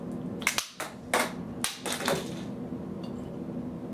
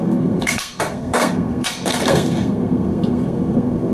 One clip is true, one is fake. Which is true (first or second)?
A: first